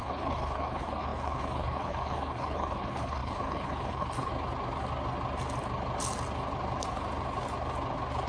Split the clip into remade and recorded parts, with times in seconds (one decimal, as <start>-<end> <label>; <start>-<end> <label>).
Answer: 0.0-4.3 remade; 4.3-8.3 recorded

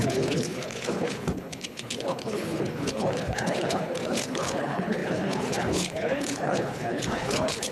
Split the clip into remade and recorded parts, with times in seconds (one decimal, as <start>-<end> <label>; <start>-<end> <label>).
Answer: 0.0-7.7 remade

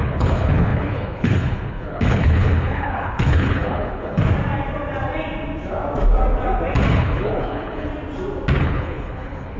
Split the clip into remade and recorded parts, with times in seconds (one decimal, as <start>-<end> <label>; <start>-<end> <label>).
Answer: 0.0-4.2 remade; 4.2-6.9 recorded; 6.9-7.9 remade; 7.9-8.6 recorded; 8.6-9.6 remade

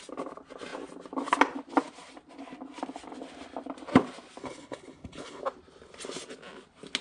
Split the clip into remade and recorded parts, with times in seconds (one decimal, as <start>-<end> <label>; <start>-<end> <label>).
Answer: 0.0-4.4 recorded; 4.4-5.4 remade; 5.4-7.0 recorded

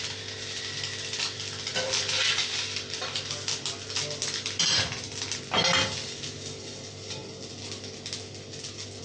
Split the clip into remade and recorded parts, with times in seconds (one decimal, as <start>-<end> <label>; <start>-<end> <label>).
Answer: 0.0-9.0 recorded